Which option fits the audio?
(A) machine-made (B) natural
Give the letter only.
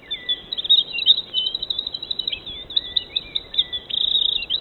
B